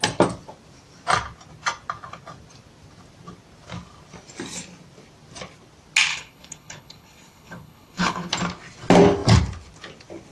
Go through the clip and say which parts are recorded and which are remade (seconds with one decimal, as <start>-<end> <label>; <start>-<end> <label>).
0.0-6.1 recorded; 6.1-8.3 remade; 8.3-10.3 recorded